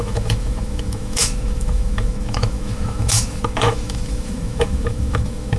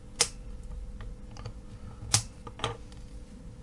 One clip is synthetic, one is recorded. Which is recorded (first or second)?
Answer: second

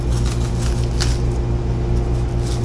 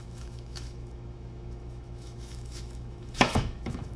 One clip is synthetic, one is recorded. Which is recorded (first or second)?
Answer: first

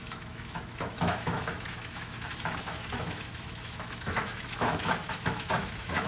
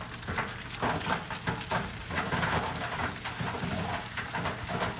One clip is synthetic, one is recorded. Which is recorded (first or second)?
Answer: second